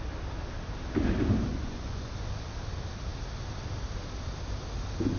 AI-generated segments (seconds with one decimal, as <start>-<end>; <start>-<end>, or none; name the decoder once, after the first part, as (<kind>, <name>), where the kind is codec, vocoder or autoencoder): 1.5-2.1 (vocoder, Vocos)